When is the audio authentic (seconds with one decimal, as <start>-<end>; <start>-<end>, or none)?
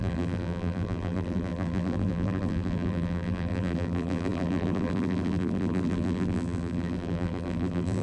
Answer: none